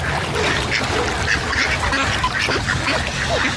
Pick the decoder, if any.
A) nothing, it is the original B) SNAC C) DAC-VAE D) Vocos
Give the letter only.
A